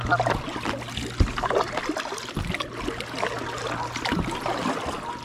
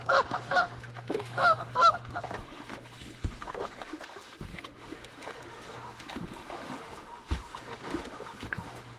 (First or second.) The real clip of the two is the first